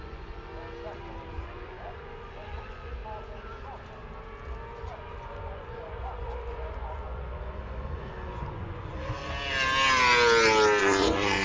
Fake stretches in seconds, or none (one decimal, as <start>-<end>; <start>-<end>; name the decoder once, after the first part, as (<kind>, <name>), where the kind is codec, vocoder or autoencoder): 0.0-0.5 (vocoder, Vocos); 1.3-3.0; 4.8-9.2; 10.8-11.4